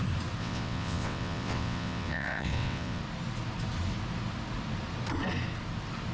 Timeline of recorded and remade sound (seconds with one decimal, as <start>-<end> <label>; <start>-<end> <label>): 0.0-0.4 recorded; 0.4-3.0 remade; 3.0-6.1 recorded